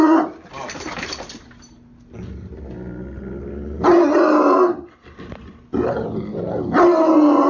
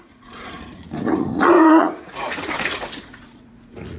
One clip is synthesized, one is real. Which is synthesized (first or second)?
second